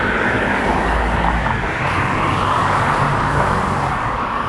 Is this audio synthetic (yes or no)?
yes